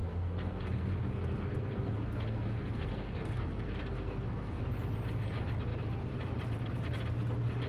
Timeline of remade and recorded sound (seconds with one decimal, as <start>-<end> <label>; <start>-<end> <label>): 0.0-4.6 remade; 4.6-7.7 recorded

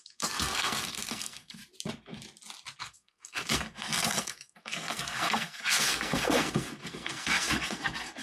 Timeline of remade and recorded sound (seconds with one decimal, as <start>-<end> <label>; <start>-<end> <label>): 0.0-1.6 remade; 1.6-2.8 recorded; 2.8-8.2 remade

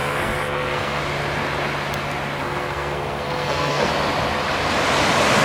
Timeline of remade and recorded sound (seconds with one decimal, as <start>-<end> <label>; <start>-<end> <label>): 0.0-1.0 remade; 1.0-2.4 recorded; 2.4-3.9 remade; 3.9-5.4 recorded